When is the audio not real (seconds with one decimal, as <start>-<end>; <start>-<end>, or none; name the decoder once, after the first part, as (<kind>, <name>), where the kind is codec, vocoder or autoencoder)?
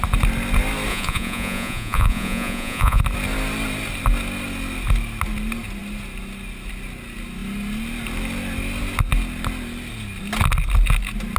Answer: 0.9-3.0 (vocoder, Vocos)